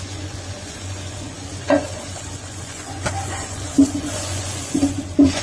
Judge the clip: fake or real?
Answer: fake